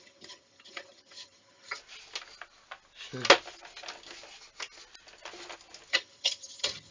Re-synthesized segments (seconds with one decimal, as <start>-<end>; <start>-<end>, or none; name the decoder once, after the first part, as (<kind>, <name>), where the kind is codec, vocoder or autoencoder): 0.0-1.8 (vocoder, HiFi-GAN); 5.9-6.9